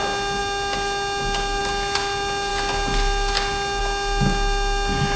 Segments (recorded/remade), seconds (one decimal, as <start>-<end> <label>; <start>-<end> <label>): 0.0-5.2 recorded